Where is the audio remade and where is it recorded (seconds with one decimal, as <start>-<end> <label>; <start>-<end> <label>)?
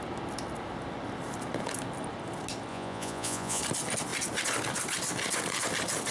0.0-2.7 recorded; 2.7-3.6 remade; 3.6-6.1 recorded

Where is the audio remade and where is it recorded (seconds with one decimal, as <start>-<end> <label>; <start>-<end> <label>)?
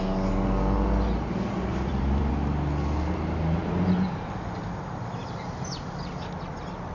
0.0-1.7 recorded; 1.7-2.3 remade; 2.3-6.9 recorded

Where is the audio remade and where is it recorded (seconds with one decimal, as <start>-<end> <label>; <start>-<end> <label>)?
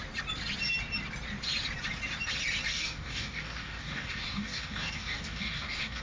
0.0-2.7 recorded; 2.7-6.0 remade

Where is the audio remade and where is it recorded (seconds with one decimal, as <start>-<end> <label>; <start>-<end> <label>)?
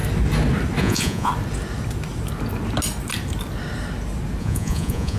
0.0-0.8 recorded; 0.8-1.3 remade; 1.3-4.4 recorded; 4.4-5.2 remade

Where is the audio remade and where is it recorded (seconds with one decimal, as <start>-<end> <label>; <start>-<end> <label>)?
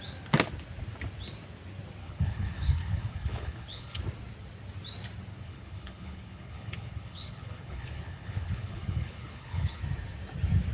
0.0-2.0 recorded; 2.0-4.0 remade; 4.0-5.3 recorded; 5.3-9.8 remade; 9.8-10.7 recorded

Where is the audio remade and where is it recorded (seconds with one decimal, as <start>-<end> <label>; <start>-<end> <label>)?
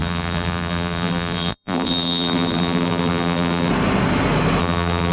0.0-3.7 remade; 3.7-4.6 recorded; 4.6-5.1 remade